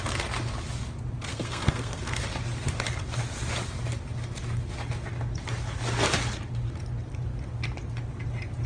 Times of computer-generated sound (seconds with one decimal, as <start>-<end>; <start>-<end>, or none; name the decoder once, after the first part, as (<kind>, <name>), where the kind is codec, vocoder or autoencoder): 1.3-2.2 (codec, SNAC)